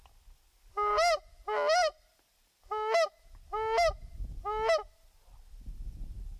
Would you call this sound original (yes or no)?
yes